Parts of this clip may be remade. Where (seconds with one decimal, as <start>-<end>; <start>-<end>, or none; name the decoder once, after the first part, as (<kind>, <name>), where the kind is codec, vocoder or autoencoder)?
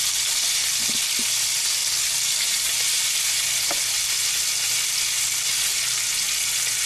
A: none